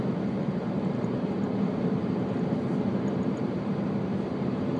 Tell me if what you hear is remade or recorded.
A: remade